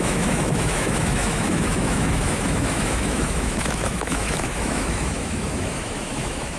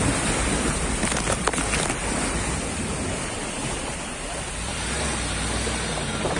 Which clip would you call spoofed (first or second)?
first